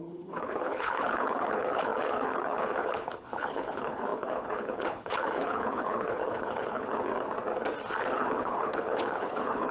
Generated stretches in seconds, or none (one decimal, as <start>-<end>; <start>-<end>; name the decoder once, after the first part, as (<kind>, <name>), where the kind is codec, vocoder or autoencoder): 0.0-7.1 (codec, HILCodec); 8.0-9.7